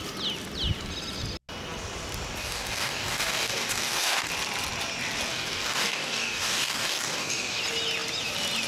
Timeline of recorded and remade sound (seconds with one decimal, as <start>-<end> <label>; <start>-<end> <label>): 0.0-2.4 recorded; 2.4-4.3 remade; 4.3-5.3 recorded; 5.3-7.6 remade; 7.6-8.7 recorded